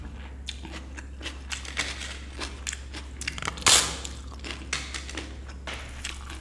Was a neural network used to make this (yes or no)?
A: no